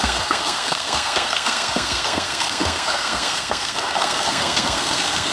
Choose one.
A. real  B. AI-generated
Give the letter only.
B